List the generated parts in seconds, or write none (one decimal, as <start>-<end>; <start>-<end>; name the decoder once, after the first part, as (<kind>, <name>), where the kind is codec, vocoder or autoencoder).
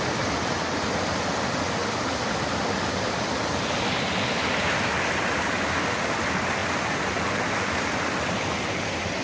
none